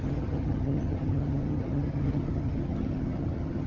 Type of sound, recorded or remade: remade